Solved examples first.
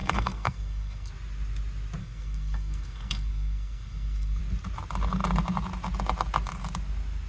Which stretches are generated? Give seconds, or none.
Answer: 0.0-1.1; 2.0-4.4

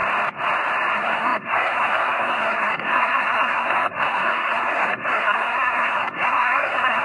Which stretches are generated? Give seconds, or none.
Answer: 0.9-7.0

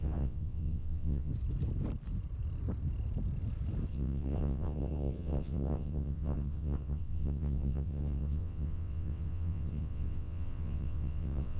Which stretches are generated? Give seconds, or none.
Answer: 0.0-1.3; 3.9-11.6

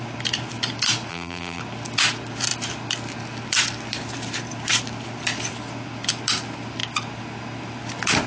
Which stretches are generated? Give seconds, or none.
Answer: 1.1-1.6